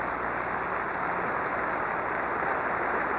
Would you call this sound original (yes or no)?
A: yes